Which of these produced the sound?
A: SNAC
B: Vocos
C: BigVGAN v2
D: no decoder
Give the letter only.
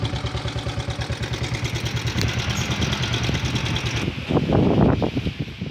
D